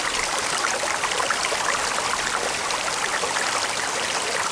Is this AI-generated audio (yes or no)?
no